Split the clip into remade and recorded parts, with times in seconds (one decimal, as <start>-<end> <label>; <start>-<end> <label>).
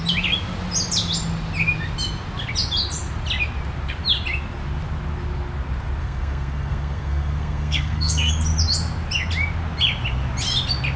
0.0-6.0 recorded; 6.0-8.3 remade; 8.3-11.0 recorded